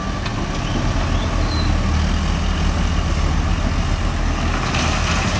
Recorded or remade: recorded